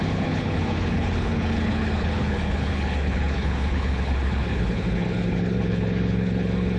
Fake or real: fake